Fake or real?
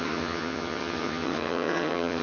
fake